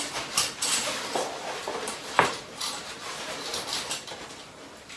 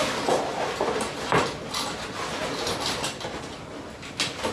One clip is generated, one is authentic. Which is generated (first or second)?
first